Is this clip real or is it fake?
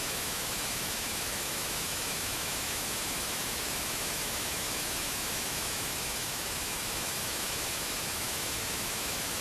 fake